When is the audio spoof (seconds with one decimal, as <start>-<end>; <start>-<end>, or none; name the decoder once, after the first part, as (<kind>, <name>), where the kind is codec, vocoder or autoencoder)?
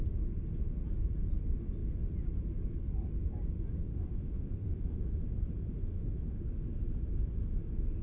3.9-5.2 (autoencoder, DAC-VAE); 5.7-6.4